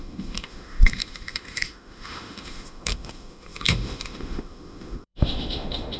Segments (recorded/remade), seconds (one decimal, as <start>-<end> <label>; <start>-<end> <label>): 0.0-6.0 remade